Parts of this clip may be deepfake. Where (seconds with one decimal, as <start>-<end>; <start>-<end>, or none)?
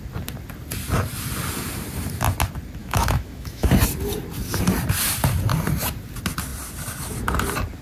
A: 2.8-3.7